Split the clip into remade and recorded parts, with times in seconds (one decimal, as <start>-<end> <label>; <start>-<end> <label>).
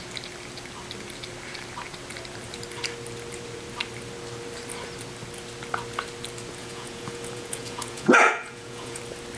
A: 0.0-6.6 recorded; 6.6-9.0 remade; 9.0-9.4 recorded